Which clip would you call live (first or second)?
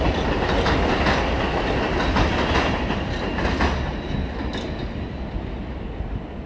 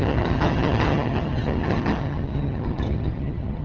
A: first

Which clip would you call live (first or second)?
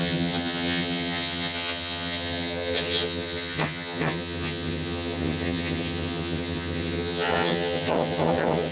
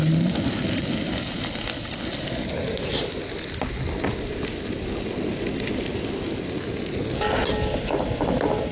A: second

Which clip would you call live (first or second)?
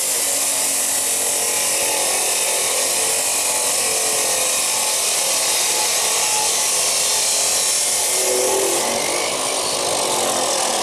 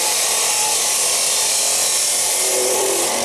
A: first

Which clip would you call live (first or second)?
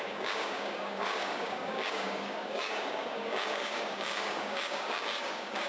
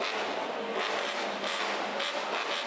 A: second